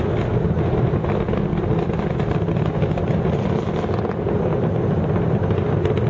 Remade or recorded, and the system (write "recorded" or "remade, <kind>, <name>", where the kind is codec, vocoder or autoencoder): recorded